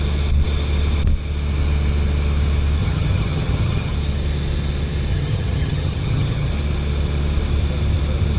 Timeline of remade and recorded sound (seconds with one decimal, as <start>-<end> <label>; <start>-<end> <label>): 0.0-2.8 recorded; 2.8-3.9 remade; 3.9-5.1 recorded; 5.1-6.5 remade; 6.5-8.4 recorded